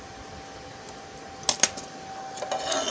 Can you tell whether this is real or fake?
real